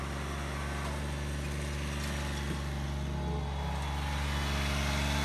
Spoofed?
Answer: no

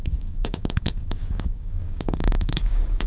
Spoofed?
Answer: yes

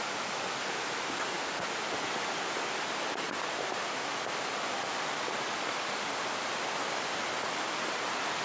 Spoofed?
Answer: no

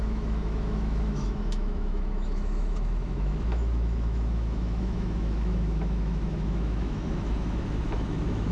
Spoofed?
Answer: yes